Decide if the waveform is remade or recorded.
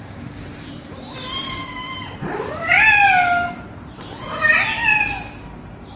remade